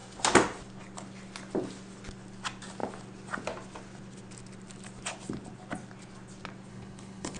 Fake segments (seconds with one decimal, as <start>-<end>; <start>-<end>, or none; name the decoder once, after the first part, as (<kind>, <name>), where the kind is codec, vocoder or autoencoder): 6.7-7.4 (codec, HILCodec)